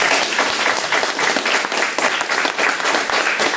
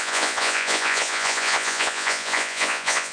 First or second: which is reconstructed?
second